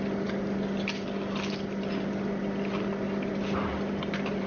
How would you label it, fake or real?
fake